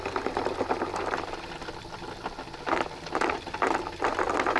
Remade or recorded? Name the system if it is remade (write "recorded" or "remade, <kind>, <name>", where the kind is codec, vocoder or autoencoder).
recorded